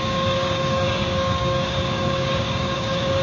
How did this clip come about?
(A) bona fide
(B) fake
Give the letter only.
B